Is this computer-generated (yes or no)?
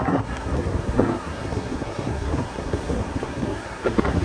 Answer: yes